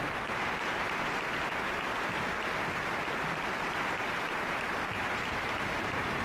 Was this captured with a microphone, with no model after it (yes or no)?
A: no